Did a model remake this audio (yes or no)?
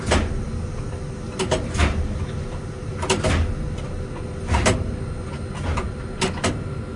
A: no